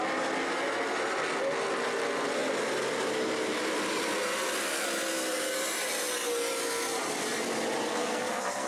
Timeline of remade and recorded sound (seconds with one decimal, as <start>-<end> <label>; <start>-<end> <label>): 0.0-7.9 recorded; 7.9-8.7 remade